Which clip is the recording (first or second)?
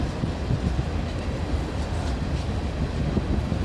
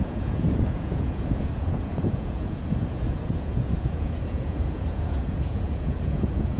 first